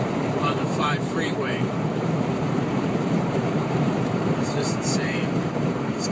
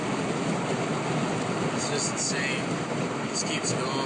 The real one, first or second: second